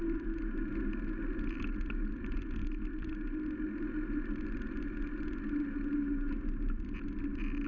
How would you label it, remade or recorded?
recorded